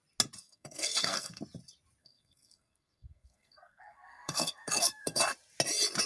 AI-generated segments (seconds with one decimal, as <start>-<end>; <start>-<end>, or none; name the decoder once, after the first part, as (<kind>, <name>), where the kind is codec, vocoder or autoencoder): 0.4-1.4 (codec, SNAC); 2.0-5.2